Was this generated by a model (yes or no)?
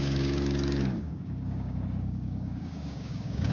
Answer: yes